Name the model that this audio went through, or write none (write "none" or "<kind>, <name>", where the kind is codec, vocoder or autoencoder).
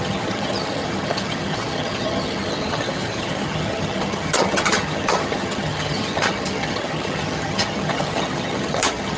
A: vocoder, HiFi-GAN